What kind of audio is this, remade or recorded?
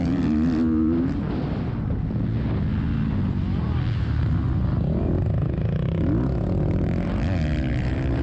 recorded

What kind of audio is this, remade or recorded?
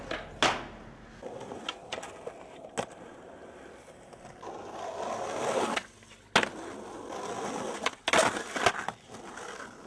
recorded